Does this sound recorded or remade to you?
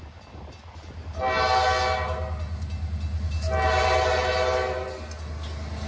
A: recorded